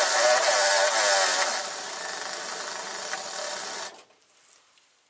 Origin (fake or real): real